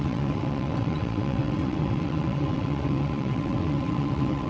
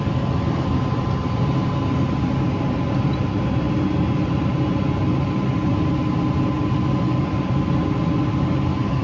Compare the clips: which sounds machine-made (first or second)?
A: first